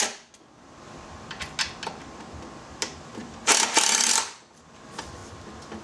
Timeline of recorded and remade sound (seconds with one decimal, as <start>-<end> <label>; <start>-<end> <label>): 0.0-3.2 remade; 3.2-4.2 recorded; 4.2-5.8 remade